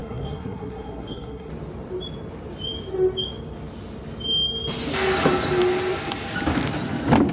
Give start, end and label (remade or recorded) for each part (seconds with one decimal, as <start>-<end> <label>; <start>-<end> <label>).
0.0-1.5 remade; 1.5-7.3 recorded